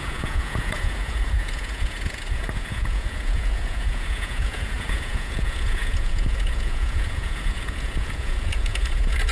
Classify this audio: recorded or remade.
remade